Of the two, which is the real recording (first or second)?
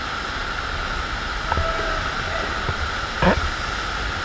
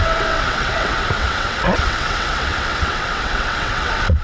first